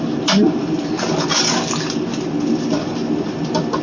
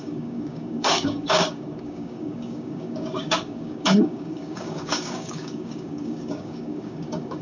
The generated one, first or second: second